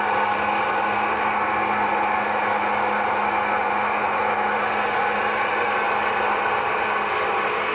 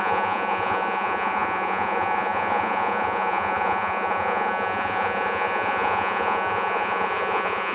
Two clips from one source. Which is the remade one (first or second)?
second